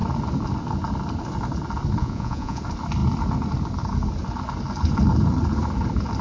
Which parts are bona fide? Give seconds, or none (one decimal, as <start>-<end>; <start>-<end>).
0.0-2.0; 2.6-6.2